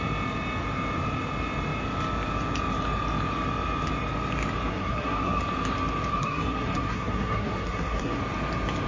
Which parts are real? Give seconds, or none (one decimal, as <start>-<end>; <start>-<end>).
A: 0.0-4.7; 5.4-6.1; 8.2-8.9